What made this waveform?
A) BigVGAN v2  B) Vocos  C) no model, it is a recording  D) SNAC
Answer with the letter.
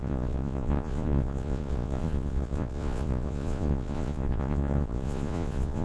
B